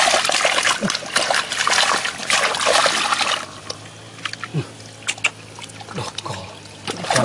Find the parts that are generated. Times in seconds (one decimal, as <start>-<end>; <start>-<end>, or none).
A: none